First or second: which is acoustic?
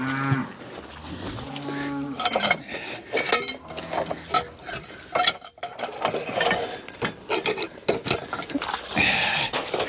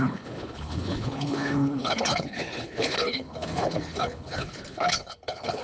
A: first